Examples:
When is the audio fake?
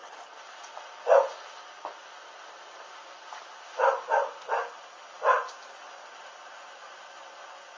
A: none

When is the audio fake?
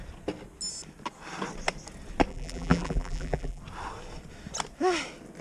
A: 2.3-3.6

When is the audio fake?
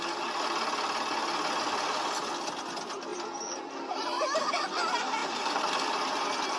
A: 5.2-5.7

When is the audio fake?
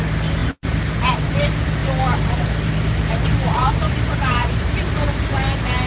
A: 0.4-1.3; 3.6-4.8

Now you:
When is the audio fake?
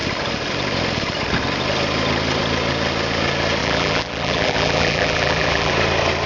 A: 3.6-5.7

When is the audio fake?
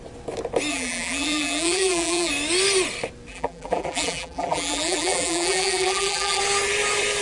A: 0.7-2.3; 3.3-6.4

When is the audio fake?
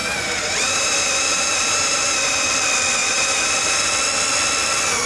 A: 0.0-2.5; 3.0-3.9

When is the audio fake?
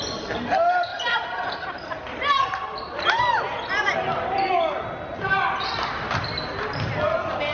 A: 0.9-4.5